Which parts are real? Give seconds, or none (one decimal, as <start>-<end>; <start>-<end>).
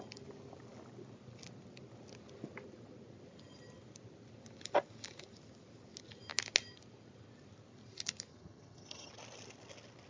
0.0-8.3; 9.1-10.1